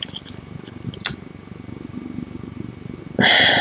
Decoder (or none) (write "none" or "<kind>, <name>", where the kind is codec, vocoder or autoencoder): none